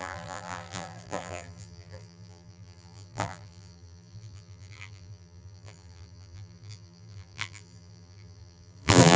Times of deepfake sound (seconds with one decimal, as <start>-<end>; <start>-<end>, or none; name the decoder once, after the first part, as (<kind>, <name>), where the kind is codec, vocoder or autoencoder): 0.0-9.2 (vocoder, BigVGAN v2)